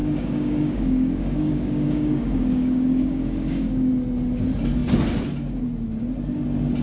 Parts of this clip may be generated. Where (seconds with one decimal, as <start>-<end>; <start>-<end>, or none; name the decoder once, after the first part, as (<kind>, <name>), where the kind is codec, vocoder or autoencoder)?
0.0-3.9 (codec, DAC)